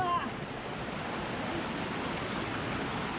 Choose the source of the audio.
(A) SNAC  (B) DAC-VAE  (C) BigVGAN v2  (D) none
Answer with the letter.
D